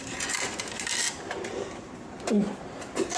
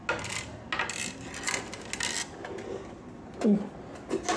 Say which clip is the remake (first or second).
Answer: first